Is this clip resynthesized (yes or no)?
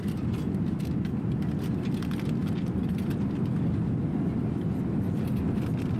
no